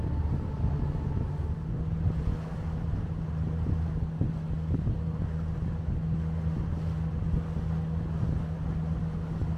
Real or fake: real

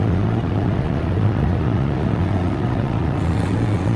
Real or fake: fake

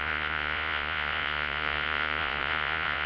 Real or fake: fake